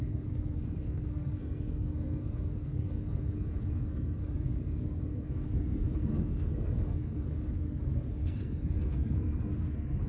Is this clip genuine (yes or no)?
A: no